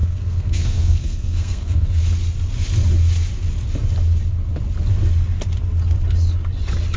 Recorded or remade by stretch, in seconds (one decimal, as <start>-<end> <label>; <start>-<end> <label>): 0.0-2.0 remade; 2.0-7.0 recorded